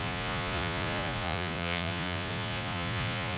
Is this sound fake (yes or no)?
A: yes